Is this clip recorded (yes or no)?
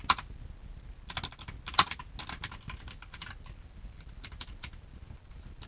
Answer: yes